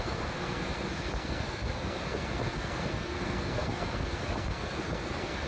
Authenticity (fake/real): fake